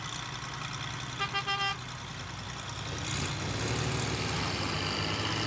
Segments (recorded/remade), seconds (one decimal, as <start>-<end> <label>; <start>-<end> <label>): 0.0-5.5 recorded